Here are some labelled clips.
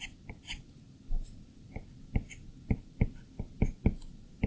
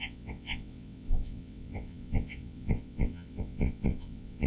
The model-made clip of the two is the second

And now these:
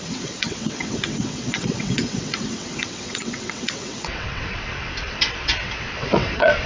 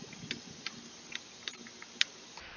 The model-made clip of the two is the first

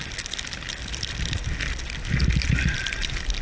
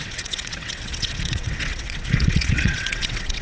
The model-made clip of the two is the second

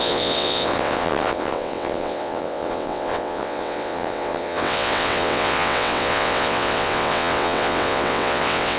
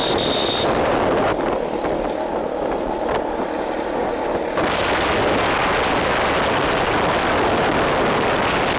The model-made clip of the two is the first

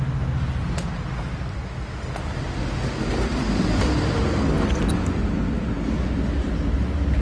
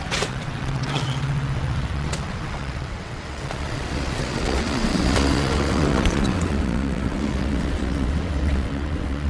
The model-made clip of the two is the second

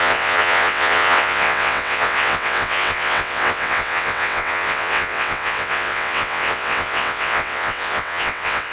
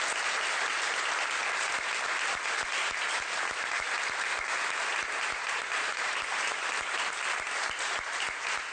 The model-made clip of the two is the first